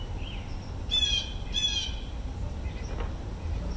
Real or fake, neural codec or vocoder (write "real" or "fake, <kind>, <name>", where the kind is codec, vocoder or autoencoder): real